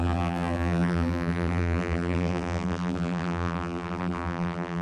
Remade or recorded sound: remade